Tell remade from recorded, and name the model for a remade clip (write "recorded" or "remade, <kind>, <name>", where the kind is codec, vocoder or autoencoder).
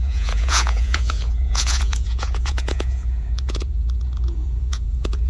remade, vocoder, Vocos